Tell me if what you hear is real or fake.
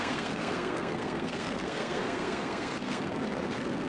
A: fake